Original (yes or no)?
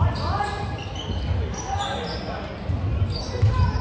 yes